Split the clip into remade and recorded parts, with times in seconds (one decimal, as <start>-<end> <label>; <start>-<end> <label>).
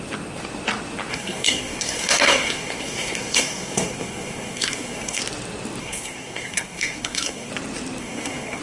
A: 0.0-1.1 recorded; 1.1-5.2 remade; 5.2-5.8 recorded; 5.8-7.5 remade; 7.5-8.0 recorded; 8.0-8.6 remade